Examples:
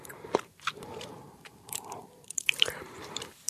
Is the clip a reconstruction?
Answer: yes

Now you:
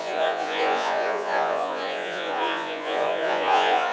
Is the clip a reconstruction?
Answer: yes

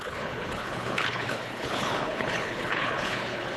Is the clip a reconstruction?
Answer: yes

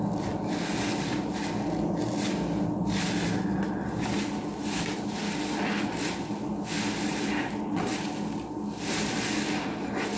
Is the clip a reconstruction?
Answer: no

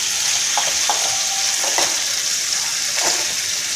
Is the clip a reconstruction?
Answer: no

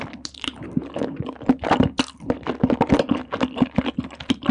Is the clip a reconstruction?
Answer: no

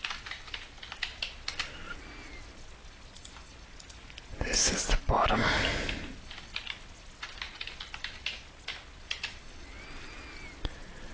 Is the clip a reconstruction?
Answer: no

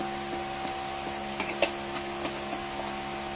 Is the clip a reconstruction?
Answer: no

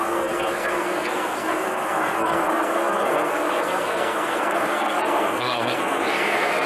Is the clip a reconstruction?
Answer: yes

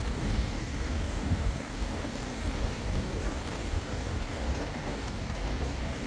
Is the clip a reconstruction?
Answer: yes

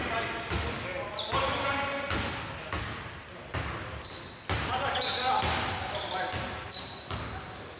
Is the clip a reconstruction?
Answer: no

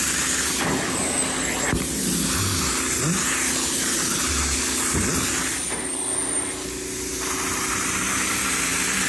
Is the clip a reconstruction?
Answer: no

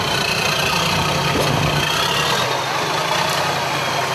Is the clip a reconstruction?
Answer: no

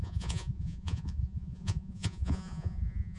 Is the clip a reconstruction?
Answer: yes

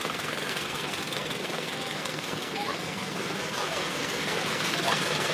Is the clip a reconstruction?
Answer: yes